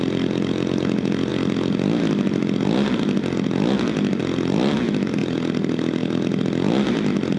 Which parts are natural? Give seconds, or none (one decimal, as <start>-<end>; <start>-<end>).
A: 0.0-7.4